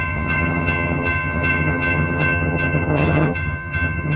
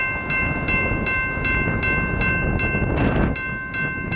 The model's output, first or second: first